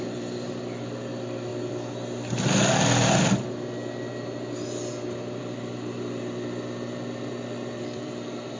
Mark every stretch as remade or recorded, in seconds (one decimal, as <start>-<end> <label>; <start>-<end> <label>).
0.0-1.5 remade; 1.5-5.4 recorded; 5.4-8.6 remade